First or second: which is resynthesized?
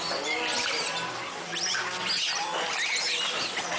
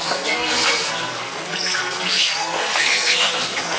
second